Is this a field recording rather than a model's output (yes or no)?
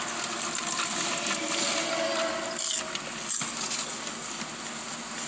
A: yes